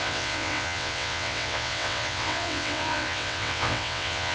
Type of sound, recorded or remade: remade